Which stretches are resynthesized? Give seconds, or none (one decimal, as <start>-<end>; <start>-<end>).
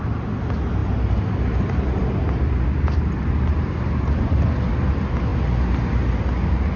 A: none